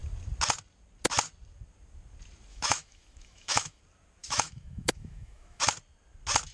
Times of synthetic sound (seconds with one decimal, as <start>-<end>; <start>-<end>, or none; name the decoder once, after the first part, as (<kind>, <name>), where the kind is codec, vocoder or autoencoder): 2.5-3.8 (autoencoder, DAC-VAE); 4.2-5.6

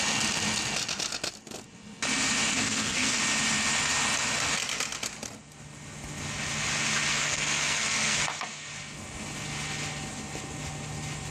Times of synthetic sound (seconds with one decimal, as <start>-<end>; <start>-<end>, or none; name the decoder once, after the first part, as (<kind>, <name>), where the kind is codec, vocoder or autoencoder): 2.5-3.2 (codec, SNAC); 7.1-8.7

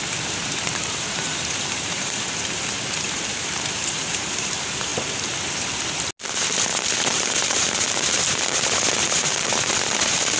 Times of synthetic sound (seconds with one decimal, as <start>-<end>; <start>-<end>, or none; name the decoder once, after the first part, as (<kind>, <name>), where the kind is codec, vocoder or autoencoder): 0.0-4.9 (vocoder, BigVGAN v2); 7.0-10.4

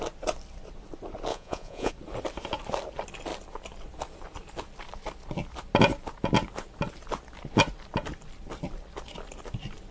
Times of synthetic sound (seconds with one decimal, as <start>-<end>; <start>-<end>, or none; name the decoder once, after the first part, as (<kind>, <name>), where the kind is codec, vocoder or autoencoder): 1.3-1.9 (vocoder, Vocos)

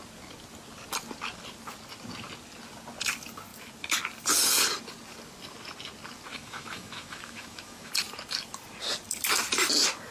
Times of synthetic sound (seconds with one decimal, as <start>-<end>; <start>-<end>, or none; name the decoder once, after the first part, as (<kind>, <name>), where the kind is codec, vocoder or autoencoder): 6.3-7.9 (autoencoder, DAC-VAE)

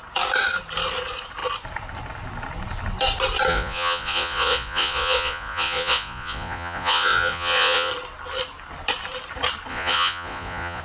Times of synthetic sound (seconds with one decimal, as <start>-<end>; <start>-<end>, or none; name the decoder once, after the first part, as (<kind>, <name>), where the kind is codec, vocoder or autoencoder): 3.5-7.9 (vocoder, Vocos); 9.7-10.8

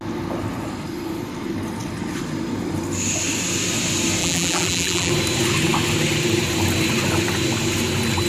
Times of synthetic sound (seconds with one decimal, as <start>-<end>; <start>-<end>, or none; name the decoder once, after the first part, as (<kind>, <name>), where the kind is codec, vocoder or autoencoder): 4.2-5.1 (vocoder, BigVGAN v2)

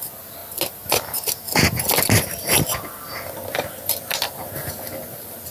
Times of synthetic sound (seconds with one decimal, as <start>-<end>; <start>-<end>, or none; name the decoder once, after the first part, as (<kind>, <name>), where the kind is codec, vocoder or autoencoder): none